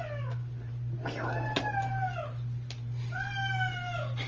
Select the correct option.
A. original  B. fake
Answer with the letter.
A